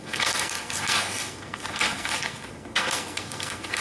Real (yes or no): no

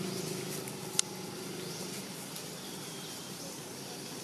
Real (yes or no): yes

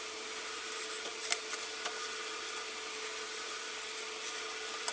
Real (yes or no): yes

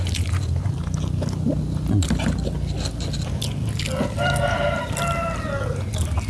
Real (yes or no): yes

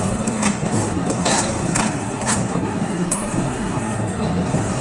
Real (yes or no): no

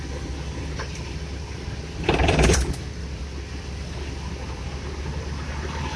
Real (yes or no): yes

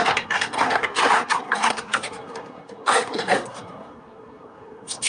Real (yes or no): no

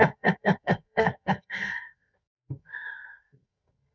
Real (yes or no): no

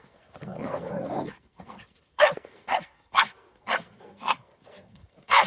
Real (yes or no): no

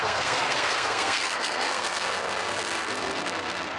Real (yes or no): no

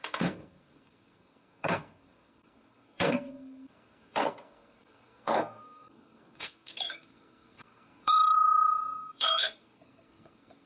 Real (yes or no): no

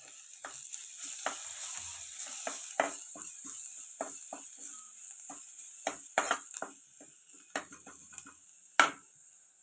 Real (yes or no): yes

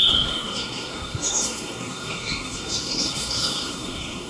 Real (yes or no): no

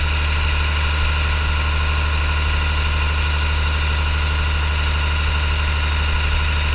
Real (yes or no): yes